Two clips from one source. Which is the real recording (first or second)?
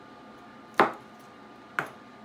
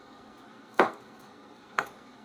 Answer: first